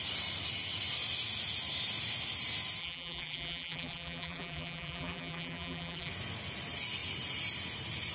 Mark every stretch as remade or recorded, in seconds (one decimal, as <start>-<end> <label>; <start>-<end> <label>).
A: 0.0-2.8 recorded; 2.8-6.1 remade; 6.1-8.1 recorded